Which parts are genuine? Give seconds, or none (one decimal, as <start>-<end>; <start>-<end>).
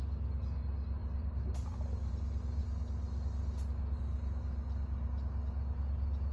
0.0-1.0; 2.1-6.3